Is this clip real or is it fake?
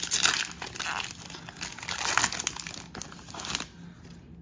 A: real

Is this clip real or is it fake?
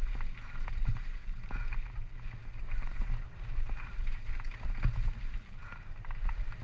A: real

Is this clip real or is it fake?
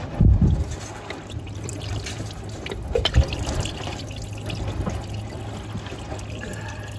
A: real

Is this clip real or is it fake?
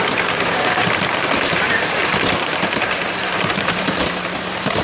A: fake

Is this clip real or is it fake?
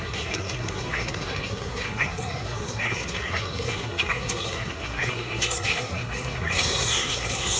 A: fake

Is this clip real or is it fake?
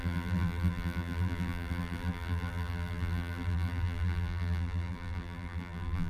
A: fake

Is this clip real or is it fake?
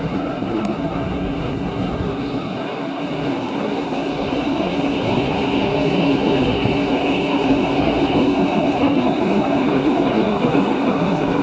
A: fake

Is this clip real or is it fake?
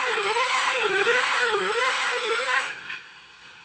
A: fake